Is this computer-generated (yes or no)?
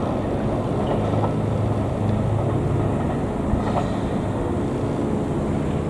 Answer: no